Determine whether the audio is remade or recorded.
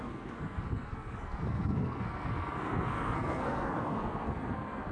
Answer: remade